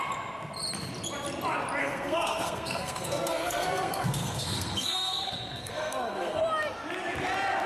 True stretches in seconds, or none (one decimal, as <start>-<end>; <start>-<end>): 0.0-1.8; 6.4-7.7